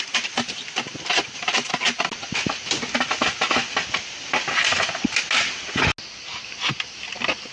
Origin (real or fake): real